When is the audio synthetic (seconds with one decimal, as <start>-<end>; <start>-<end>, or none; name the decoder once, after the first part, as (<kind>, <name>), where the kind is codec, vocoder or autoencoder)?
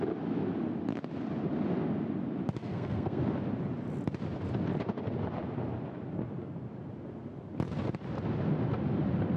2.6-3.2 (codec, SNAC)